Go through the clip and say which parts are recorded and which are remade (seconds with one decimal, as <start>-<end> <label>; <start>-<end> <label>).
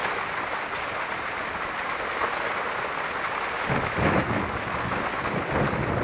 0.0-6.0 recorded